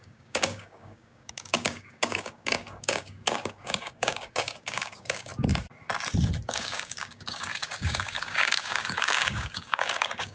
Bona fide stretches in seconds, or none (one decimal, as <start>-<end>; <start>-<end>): 5.3-6.5